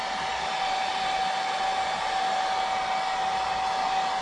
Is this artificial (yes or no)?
no